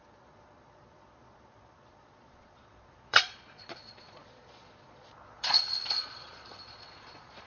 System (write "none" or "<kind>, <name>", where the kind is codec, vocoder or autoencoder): vocoder, Vocos